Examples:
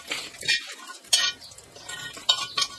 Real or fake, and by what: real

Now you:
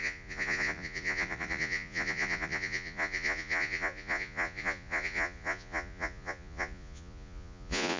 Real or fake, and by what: fake, vocoder, Vocos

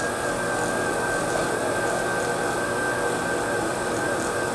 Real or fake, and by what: real